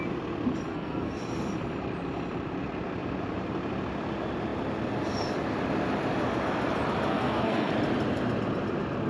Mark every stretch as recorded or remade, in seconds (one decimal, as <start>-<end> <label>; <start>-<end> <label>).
0.0-0.7 recorded; 0.7-1.2 remade; 1.2-7.1 recorded; 7.1-7.7 remade; 7.7-9.1 recorded